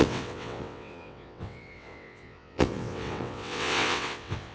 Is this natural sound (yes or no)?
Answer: no